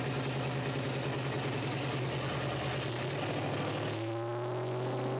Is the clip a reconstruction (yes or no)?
no